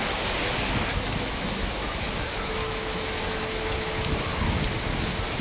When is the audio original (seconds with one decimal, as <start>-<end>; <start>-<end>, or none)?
0.0-0.9; 3.9-5.4